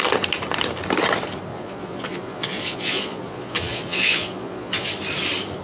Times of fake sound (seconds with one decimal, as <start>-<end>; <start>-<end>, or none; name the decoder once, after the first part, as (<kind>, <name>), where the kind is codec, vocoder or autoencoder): 1.5-4.9 (vocoder, Vocos)